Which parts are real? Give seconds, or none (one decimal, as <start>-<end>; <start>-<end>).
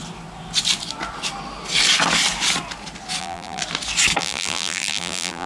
0.0-3.2; 3.6-4.2